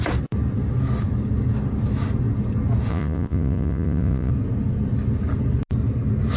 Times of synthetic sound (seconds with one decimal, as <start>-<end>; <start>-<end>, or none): 2.9-4.3